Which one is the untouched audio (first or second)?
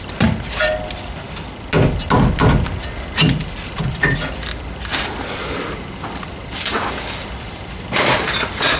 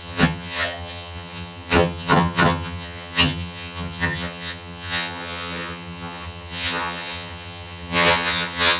first